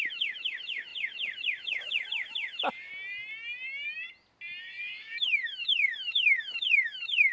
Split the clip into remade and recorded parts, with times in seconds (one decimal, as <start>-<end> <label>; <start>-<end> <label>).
0.0-2.9 remade; 2.9-4.6 recorded; 4.6-7.3 remade

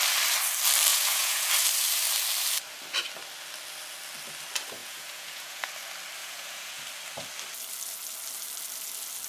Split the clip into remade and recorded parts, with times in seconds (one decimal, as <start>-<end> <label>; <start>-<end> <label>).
0.0-0.9 recorded; 0.9-1.5 remade; 1.5-4.8 recorded; 4.8-5.7 remade; 5.7-6.2 recorded; 6.2-6.8 remade; 6.8-9.3 recorded